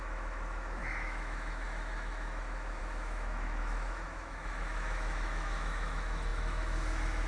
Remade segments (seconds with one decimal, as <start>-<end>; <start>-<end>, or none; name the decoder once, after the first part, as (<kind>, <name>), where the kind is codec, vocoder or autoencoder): 0.0-7.3 (autoencoder, DAC-VAE)